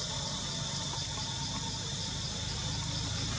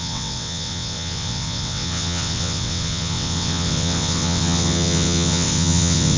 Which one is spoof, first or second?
second